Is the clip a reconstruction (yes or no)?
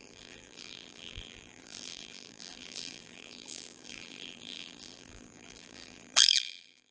yes